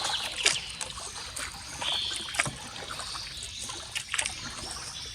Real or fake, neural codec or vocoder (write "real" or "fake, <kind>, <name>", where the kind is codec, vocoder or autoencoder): real